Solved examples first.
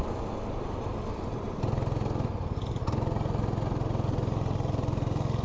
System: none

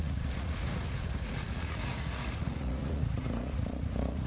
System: vocoder, Vocos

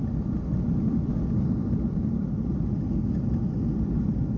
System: none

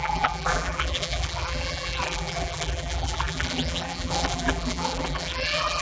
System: vocoder, BigVGAN v2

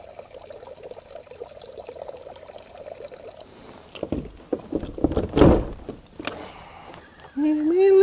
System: none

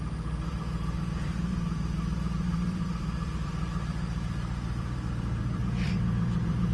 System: vocoder, BigVGAN v2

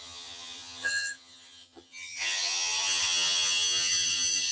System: vocoder, HiFi-GAN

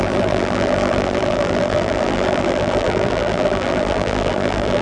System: vocoder, BigVGAN v2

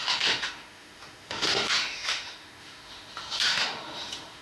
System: autoencoder, DAC-VAE